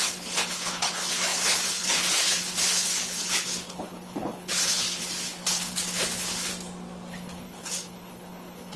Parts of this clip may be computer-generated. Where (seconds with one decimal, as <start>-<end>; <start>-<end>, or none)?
0.0-6.5; 7.1-8.8